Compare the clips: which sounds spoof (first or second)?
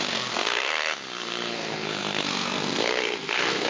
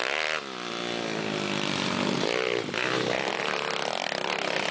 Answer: first